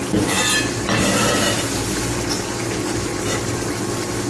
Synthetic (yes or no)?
no